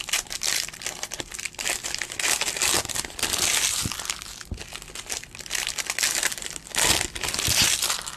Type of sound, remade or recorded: recorded